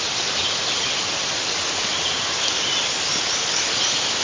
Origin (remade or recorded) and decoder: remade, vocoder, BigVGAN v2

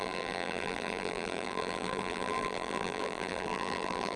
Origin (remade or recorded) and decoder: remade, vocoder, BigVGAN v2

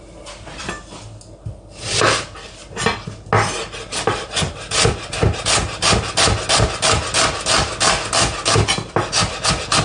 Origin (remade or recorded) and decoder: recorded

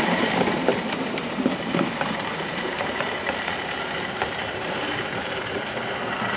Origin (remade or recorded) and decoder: remade, vocoder, BigVGAN v2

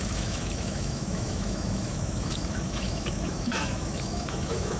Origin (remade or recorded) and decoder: remade, autoencoder, DAC-VAE